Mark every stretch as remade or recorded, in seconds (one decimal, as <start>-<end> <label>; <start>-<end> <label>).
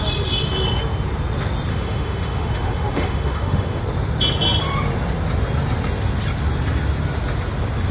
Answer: 0.0-1.7 recorded; 1.7-3.8 remade; 3.8-7.9 recorded